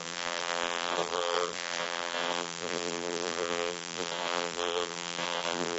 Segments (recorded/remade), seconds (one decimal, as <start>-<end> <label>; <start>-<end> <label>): 0.0-5.8 remade